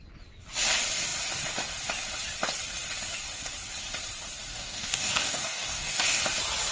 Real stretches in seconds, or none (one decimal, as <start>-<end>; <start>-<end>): 0.0-4.5; 6.2-6.7